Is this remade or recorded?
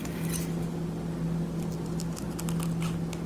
recorded